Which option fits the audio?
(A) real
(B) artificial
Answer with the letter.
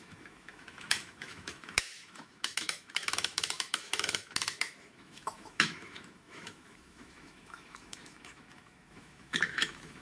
B